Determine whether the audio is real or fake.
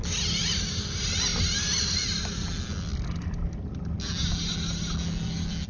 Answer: real